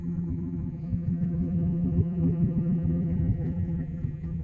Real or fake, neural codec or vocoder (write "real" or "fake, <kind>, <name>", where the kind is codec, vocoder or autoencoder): fake, vocoder, BigVGAN v2